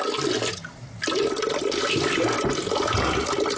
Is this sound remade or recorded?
recorded